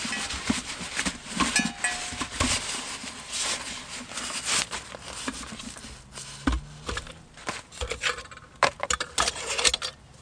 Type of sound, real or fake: real